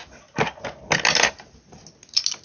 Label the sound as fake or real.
real